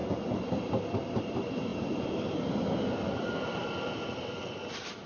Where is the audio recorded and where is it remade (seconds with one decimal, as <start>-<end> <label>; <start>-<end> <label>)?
0.0-5.1 remade